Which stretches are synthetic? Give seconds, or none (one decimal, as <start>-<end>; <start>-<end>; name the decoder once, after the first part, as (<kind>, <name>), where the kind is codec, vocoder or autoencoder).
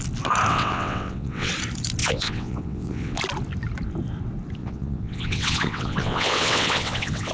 0.5-1.5 (vocoder, WaveNeXt); 2.0-3.2; 4.6-7.3